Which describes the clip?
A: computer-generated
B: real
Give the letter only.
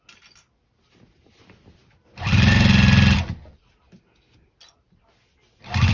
B